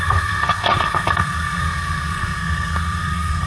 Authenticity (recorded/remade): remade